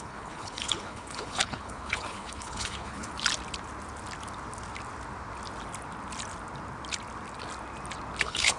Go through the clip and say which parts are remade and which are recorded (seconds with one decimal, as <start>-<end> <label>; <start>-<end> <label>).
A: 0.0-3.1 remade; 3.1-8.2 recorded; 8.2-8.6 remade